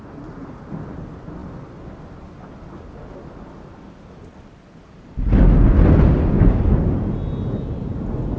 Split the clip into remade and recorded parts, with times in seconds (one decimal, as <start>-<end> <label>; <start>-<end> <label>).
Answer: 0.0-8.4 recorded